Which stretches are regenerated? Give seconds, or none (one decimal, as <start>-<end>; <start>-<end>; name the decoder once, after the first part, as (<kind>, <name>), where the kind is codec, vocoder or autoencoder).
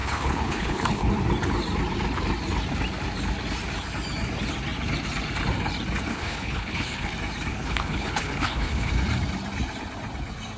0.0-1.1 (codec, HILCodec); 6.1-7.1; 7.5-8.9